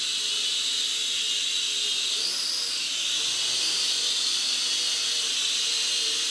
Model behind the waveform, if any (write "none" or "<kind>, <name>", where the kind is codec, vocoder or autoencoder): none